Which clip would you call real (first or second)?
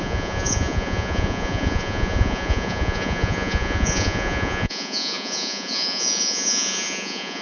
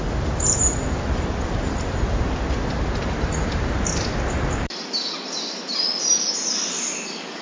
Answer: second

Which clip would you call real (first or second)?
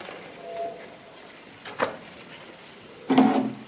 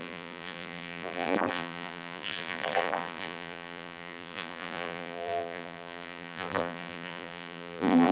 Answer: first